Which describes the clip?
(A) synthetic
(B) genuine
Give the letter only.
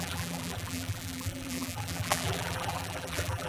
A